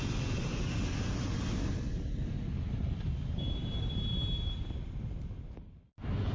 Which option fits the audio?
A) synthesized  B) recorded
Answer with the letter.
B